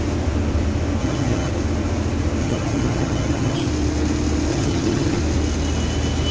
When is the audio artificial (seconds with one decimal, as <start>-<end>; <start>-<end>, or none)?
1.0-1.5; 2.4-3.7; 4.5-5.2